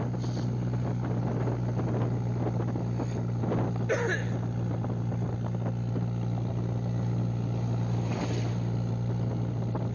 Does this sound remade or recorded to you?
recorded